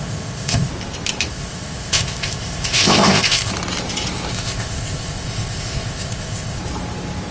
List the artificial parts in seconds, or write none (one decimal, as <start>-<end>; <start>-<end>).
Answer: 0.0-0.7; 1.3-3.5; 4.3-6.6